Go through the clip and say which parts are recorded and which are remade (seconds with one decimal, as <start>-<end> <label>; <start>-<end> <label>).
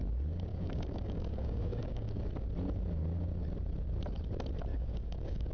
0.0-0.5 recorded; 0.5-2.2 remade; 2.2-4.7 recorded; 4.7-5.5 remade